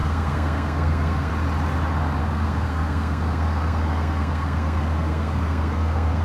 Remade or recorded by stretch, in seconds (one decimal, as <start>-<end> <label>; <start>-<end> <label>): 0.0-1.3 remade; 1.3-2.2 recorded; 2.2-6.2 remade